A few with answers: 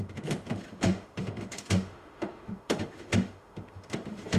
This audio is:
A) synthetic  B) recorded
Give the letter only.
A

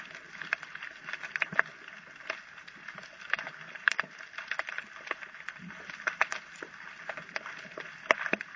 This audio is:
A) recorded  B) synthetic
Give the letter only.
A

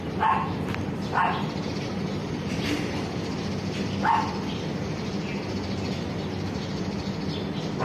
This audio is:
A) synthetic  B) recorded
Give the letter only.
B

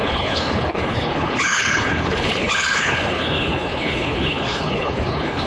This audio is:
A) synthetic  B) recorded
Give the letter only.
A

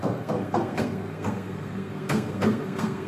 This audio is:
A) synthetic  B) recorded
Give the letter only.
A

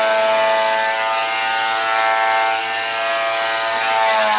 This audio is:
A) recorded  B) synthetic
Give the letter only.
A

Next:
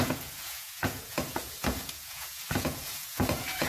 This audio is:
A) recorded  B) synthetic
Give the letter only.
B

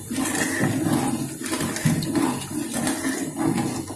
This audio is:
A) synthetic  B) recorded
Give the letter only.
B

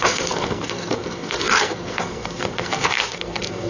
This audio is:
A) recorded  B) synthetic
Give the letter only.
B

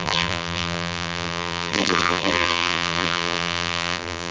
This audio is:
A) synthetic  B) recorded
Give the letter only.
A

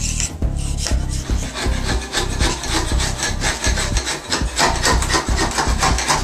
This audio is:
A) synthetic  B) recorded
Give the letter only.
B